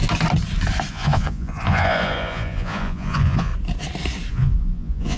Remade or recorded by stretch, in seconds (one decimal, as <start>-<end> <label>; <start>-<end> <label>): 0.0-0.9 recorded; 0.9-3.5 remade; 3.5-4.3 recorded; 4.3-5.2 remade